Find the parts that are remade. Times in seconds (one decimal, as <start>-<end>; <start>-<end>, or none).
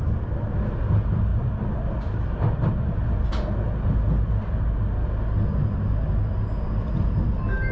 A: none